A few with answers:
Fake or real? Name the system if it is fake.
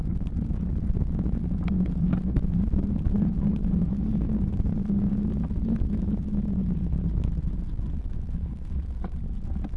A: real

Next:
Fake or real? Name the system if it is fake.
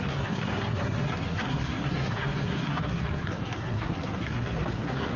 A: fake, codec, SNAC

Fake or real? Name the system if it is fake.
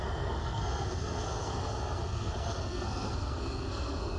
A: fake, codec, SNAC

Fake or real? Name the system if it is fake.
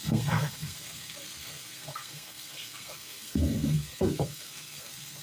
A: fake, codec, SNAC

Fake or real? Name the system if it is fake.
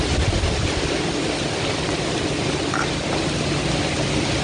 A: real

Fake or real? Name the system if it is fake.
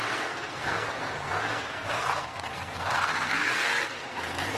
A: fake, codec, SNAC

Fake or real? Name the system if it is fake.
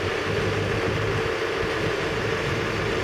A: real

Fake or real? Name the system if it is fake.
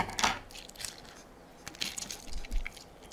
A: real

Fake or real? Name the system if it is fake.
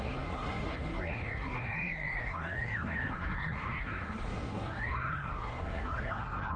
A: fake, codec, SNAC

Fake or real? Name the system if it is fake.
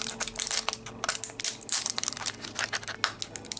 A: real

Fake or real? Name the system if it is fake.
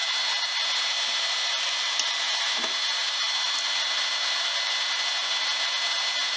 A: real